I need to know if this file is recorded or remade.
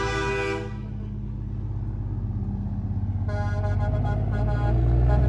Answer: recorded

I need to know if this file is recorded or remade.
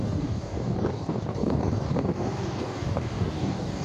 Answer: remade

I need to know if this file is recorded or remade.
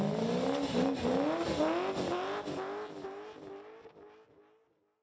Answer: recorded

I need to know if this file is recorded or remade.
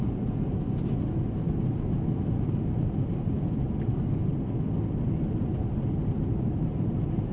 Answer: recorded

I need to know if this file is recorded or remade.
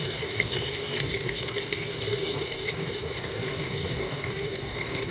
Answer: remade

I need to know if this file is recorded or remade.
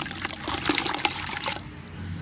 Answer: recorded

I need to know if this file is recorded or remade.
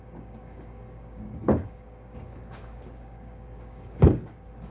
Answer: remade